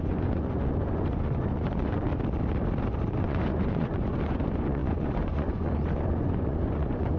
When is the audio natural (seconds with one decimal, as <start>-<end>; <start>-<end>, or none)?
2.1-3.2